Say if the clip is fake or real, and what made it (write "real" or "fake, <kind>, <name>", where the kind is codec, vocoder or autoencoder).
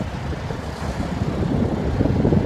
real